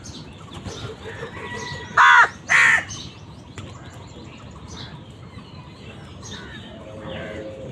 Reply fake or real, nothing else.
real